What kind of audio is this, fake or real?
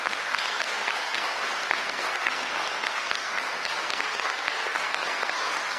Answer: fake